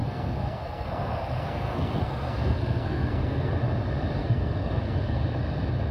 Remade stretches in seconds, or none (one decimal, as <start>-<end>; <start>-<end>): 0.0-3.5; 4.2-5.2